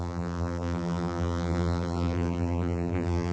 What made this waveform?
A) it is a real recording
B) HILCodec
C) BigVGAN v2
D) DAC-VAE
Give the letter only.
C